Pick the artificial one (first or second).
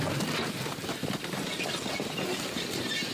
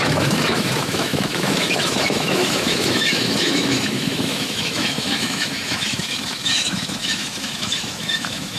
second